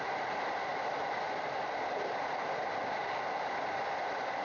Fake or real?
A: real